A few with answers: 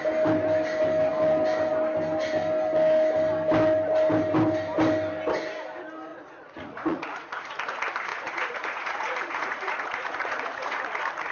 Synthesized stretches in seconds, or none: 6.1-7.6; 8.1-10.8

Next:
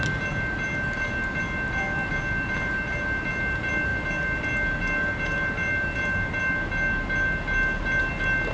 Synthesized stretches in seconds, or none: none

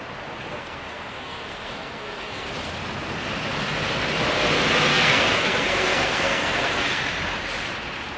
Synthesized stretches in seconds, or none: 0.5-2.5; 4.9-7.0

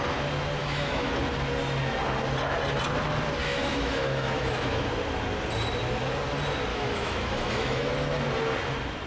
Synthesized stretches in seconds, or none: 0.6-1.1; 3.4-4.9; 6.7-7.9

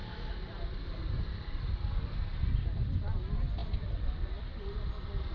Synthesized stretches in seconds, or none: none

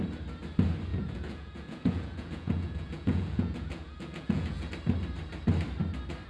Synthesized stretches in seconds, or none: 0.9-4.7

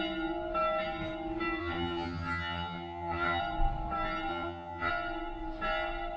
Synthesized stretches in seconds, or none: 1.6-3.4; 4.3-4.9